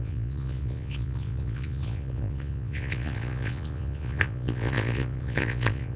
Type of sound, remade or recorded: remade